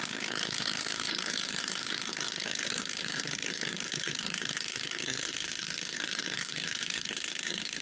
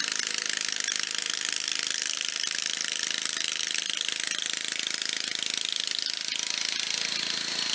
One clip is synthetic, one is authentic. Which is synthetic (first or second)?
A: first